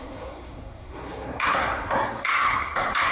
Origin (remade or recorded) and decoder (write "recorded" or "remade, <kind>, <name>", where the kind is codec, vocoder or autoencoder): remade, codec, SNAC